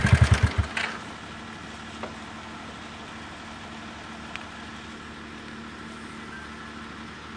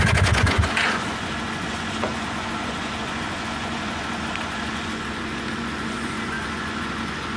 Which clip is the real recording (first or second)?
first